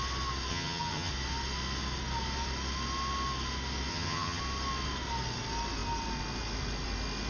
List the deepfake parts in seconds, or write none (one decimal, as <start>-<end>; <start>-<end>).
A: 0.5-1.1; 3.9-4.4